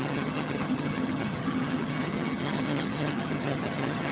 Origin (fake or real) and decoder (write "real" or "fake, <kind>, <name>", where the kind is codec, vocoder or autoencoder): fake, vocoder, HiFi-GAN